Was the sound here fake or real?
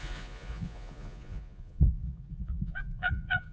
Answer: fake